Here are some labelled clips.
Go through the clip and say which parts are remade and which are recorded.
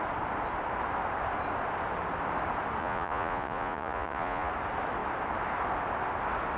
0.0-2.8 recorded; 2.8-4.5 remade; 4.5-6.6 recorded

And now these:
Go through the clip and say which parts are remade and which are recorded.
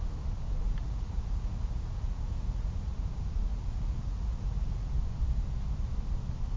0.0-0.8 recorded; 0.8-2.9 remade; 2.9-3.5 recorded; 3.5-4.9 remade; 4.9-6.6 recorded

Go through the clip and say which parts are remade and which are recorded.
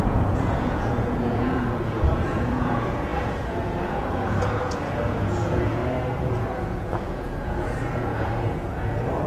0.0-5.8 remade; 5.8-6.3 recorded; 6.3-9.3 remade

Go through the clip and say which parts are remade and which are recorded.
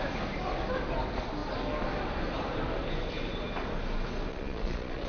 0.0-4.3 recorded; 4.3-5.1 remade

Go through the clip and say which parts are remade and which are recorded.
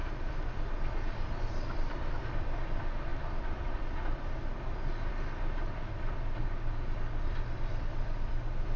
0.0-8.8 recorded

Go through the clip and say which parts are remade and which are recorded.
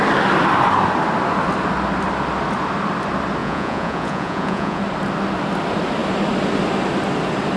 0.0-3.4 recorded; 3.4-4.8 remade; 4.8-7.6 recorded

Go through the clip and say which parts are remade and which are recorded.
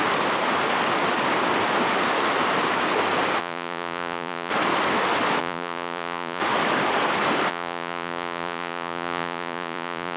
0.0-3.4 recorded; 3.4-4.5 remade; 4.5-5.4 recorded; 5.4-6.4 remade; 6.4-7.5 recorded; 7.5-10.2 remade